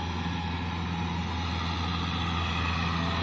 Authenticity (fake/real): real